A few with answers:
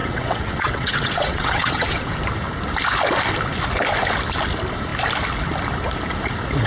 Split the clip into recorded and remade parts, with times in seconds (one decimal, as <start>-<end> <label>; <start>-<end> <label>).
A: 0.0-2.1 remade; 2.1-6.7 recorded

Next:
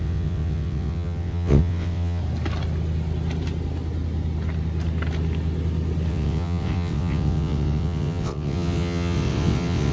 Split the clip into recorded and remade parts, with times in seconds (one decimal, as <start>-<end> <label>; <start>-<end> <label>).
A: 0.0-2.2 remade; 2.2-6.1 recorded; 6.1-9.9 remade

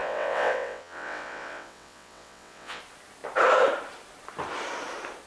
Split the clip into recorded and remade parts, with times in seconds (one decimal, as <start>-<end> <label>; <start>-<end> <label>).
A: 0.0-2.8 remade; 2.8-5.3 recorded

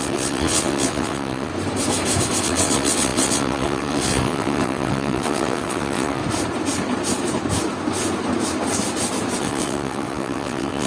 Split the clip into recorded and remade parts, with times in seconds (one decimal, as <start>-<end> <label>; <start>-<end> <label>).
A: 0.0-1.5 remade; 1.5-2.4 recorded; 2.4-6.2 remade; 6.2-9.4 recorded; 9.4-10.9 remade

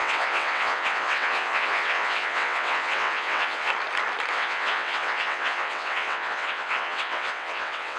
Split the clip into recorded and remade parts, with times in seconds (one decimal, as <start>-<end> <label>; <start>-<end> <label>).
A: 0.0-3.7 remade; 3.7-4.3 recorded; 4.3-8.0 remade